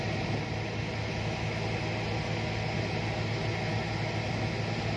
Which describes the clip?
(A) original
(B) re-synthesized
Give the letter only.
A